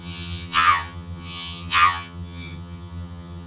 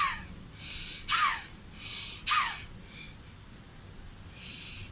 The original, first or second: second